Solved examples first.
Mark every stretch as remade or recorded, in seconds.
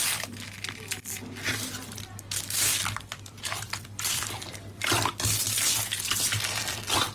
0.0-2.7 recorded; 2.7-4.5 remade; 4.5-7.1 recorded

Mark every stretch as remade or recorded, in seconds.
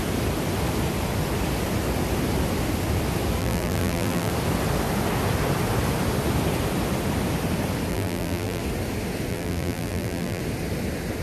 0.0-3.4 recorded; 3.4-4.3 remade; 4.3-7.9 recorded; 7.9-8.6 remade; 8.6-9.3 recorded; 9.3-10.4 remade; 10.4-11.2 recorded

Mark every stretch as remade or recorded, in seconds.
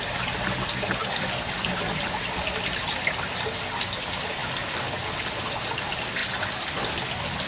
0.0-1.0 recorded; 1.0-1.7 remade; 1.7-4.4 recorded; 4.4-5.8 remade; 5.8-6.2 recorded; 6.2-6.9 remade; 6.9-7.5 recorded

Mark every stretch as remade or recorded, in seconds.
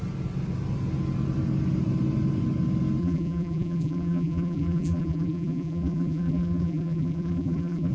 0.0-3.0 recorded; 3.0-7.9 remade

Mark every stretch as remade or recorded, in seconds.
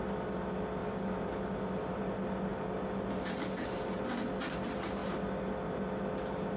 0.0-0.8 recorded; 0.8-2.0 remade; 2.0-2.5 recorded; 2.5-4.0 remade; 4.0-6.6 recorded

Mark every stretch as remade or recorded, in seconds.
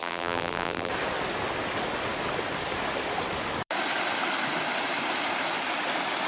0.0-0.9 remade; 0.9-6.3 recorded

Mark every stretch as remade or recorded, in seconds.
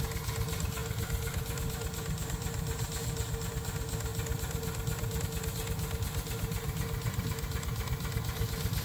0.0-8.8 recorded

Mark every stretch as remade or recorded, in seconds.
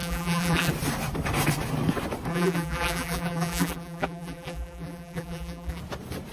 0.0-0.7 remade; 0.7-2.3 recorded; 2.3-5.8 remade; 5.8-6.3 recorded